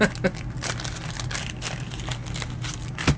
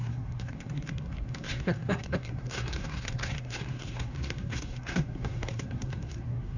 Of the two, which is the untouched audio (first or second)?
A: first